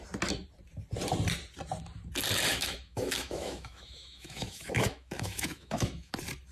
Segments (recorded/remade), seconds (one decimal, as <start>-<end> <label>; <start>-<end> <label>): 0.0-2.5 recorded; 2.5-6.1 remade; 6.1-6.5 recorded